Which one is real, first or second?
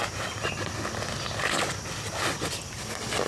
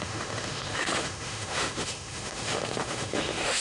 first